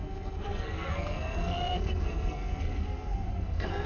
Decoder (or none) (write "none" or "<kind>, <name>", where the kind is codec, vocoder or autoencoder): codec, SNAC